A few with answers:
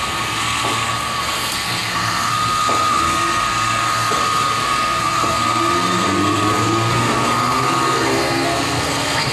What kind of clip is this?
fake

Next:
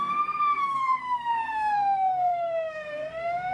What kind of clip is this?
fake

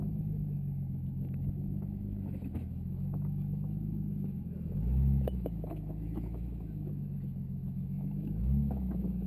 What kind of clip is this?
fake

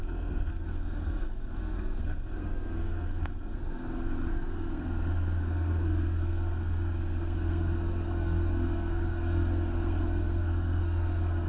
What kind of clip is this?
fake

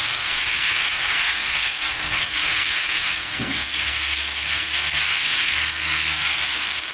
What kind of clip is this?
fake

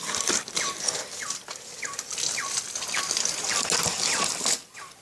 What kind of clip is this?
real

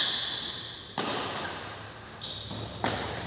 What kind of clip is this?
real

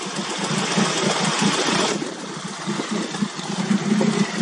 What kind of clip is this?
real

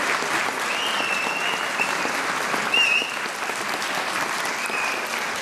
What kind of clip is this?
real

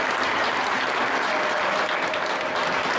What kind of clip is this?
real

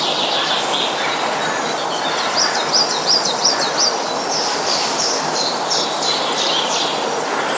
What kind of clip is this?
real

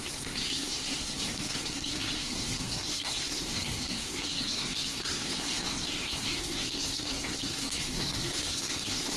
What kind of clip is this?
fake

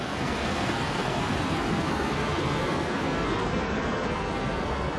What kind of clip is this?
fake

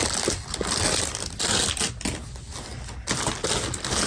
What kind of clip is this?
real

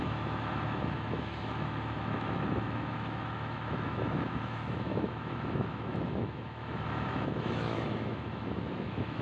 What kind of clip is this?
fake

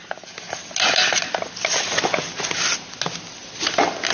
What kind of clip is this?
real